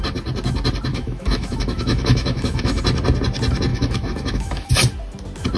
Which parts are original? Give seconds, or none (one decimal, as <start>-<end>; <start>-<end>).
0.0-0.9; 2.8-3.7; 4.7-5.6